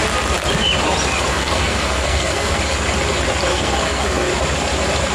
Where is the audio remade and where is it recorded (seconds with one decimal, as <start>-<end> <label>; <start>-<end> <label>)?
0.0-1.3 recorded; 1.3-2.6 remade; 2.6-3.5 recorded; 3.5-4.3 remade; 4.3-5.1 recorded